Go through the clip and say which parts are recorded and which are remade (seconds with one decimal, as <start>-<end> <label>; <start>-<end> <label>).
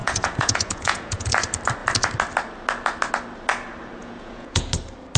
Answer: 0.0-1.3 remade; 1.3-4.0 recorded; 4.0-4.7 remade; 4.7-5.2 recorded